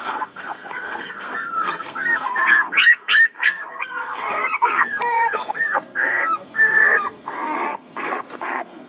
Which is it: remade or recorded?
remade